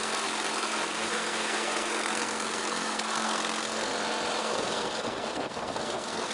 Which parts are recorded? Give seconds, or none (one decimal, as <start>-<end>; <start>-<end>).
3.9-4.4